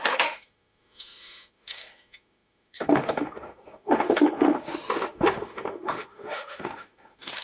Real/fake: fake